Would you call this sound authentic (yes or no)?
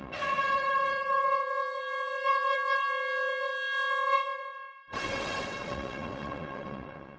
no